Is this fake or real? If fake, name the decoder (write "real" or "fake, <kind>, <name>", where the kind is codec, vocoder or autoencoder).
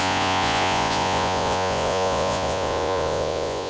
fake, vocoder, Vocos